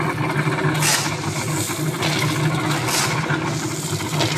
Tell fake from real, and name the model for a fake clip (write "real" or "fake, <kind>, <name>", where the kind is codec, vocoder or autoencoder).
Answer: real